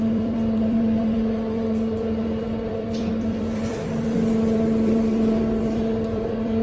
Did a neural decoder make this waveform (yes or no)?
yes